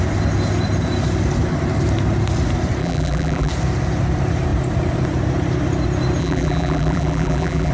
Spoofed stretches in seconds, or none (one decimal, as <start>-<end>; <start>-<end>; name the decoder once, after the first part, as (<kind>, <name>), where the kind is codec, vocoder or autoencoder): 2.8-3.5 (vocoder, BigVGAN v2); 6.2-7.7